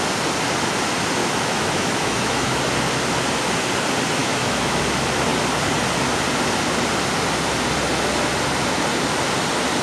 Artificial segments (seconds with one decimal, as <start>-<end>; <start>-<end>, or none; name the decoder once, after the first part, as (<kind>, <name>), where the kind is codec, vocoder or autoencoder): 1.2-2.6 (autoencoder, DAC-VAE); 4.2-4.8